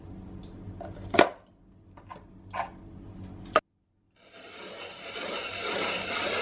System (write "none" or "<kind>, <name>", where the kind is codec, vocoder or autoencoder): none